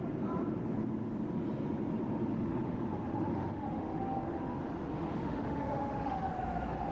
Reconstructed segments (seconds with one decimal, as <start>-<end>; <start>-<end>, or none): 2.3-6.2